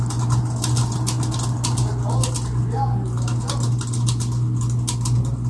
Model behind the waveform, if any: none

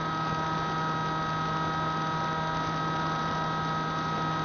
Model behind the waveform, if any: none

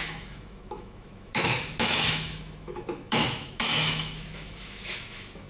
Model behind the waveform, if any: autoencoder, DAC-VAE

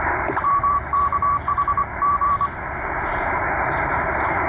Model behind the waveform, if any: vocoder, BigVGAN v2